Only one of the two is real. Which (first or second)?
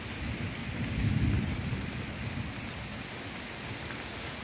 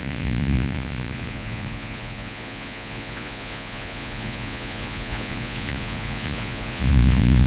first